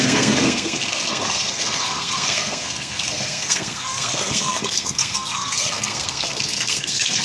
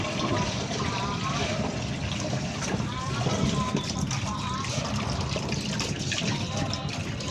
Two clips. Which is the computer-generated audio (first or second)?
first